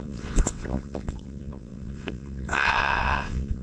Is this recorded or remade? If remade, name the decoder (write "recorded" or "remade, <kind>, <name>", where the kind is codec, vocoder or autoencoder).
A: remade, vocoder, WaveNeXt